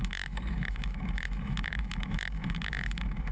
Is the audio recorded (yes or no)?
no